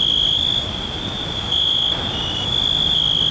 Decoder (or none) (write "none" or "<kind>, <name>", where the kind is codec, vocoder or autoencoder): none